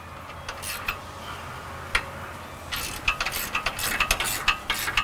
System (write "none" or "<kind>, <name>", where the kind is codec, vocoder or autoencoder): none